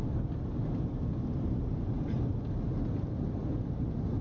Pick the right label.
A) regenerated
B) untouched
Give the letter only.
B